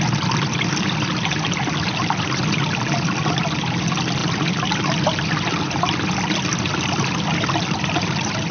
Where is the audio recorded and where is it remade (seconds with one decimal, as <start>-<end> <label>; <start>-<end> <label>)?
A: 0.0-8.5 recorded